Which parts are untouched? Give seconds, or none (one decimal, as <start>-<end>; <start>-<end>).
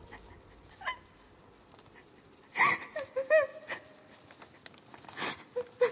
0.0-5.9